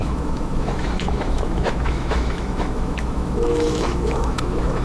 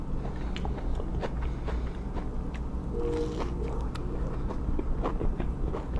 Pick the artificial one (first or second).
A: first